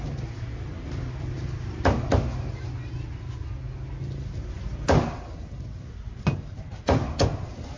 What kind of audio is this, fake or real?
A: real